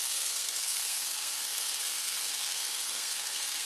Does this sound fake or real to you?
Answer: fake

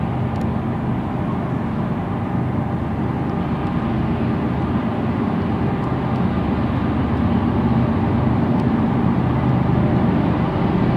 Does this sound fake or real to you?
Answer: real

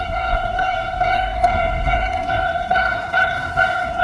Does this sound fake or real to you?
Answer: fake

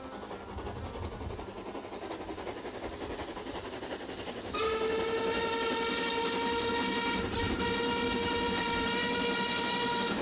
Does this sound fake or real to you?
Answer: real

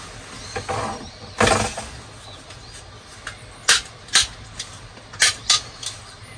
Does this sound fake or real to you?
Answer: real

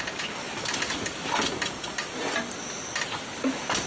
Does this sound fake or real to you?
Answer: real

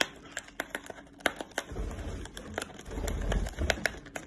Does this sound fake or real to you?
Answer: real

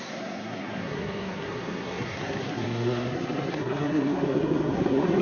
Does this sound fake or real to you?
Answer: fake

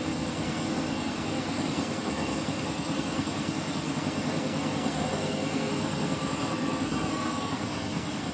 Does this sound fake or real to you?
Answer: fake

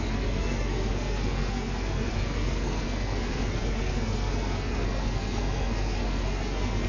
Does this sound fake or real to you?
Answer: fake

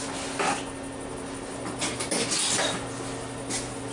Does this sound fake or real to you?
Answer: real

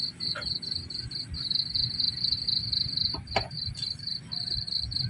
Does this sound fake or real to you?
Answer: real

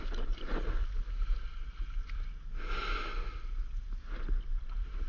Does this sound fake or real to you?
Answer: real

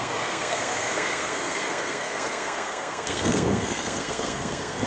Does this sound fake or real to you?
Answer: fake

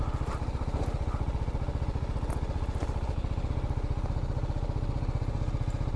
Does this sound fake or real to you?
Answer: real